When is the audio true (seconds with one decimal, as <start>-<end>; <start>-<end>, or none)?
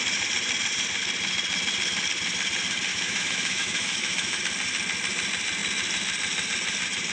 0.0-2.9; 4.4-7.1